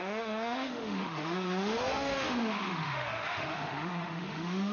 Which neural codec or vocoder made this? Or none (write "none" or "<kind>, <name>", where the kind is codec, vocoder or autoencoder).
autoencoder, DAC-VAE